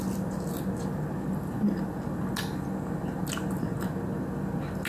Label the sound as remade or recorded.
recorded